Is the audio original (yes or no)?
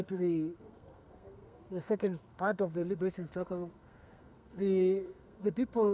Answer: no